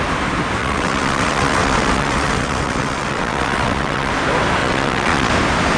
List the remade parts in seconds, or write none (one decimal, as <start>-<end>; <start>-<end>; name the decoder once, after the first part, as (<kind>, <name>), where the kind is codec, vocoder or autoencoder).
0.6-4.1 (vocoder, WaveNeXt); 4.6-5.3